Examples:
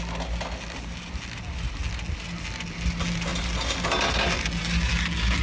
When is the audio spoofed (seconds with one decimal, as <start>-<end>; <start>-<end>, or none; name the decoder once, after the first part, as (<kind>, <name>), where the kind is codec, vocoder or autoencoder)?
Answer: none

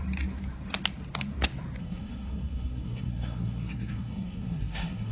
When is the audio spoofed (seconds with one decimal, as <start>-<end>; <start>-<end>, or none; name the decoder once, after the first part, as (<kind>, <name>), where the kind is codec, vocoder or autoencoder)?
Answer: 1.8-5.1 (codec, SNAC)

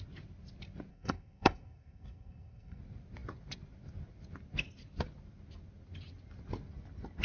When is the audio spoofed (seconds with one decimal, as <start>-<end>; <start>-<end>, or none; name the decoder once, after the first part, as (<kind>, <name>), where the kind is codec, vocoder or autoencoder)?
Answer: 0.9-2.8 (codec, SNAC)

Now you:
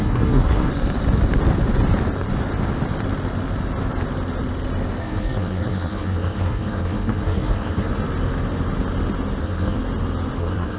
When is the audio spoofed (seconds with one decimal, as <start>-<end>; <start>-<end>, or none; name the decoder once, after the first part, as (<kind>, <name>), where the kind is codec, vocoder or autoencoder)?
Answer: 0.0-0.7 (codec, SNAC); 5.0-7.9; 9.4-9.8; 10.4-10.8

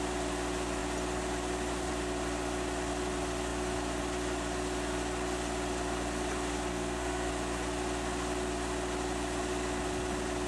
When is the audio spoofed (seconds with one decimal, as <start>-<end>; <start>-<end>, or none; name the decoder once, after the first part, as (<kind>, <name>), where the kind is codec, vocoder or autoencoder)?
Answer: 6.7-7.3 (codec, SNAC)

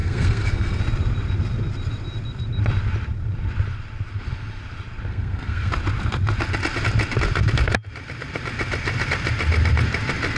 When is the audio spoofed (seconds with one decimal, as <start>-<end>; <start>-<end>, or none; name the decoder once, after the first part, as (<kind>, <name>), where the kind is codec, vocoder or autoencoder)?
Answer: 0.0-0.8 (codec, SNAC); 5.1-5.7